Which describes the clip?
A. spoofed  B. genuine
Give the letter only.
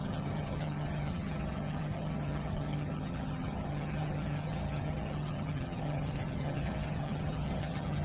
A